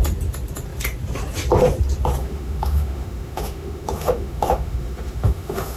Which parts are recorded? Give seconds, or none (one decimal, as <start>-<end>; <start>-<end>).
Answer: 0.0-2.2